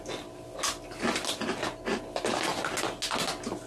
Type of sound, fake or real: real